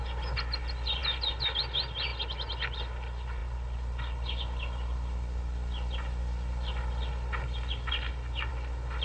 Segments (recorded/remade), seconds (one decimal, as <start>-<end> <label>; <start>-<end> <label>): 0.0-9.0 recorded